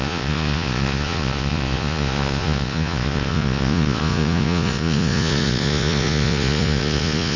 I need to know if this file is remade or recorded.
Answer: remade